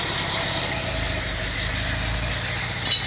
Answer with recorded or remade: recorded